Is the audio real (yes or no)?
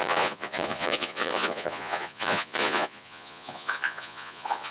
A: no